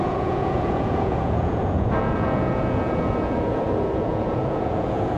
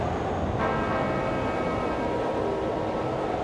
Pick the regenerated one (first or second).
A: first